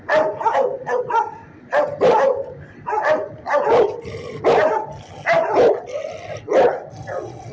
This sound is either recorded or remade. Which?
recorded